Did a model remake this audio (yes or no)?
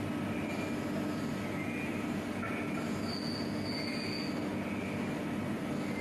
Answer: no